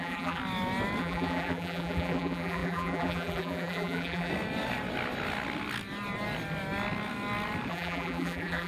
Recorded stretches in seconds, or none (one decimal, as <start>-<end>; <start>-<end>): 0.4-1.0; 4.3-7.7